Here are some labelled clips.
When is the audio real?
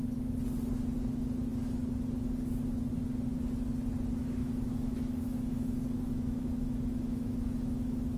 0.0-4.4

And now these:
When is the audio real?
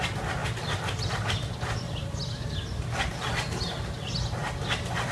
0.0-5.1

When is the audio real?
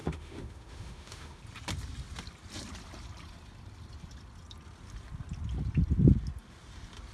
1.4-7.1